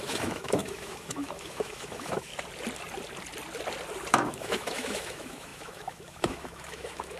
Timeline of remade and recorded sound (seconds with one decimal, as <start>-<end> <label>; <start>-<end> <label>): 0.0-2.3 remade; 2.3-4.1 recorded; 4.1-7.2 remade